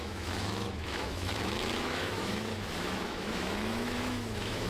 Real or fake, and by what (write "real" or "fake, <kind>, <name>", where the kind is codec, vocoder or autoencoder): fake, autoencoder, DAC-VAE